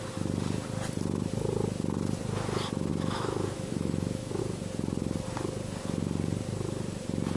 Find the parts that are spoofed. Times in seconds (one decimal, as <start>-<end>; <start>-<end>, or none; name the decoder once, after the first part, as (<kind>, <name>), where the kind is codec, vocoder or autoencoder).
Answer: 2.9-4.4 (autoencoder, DAC-VAE)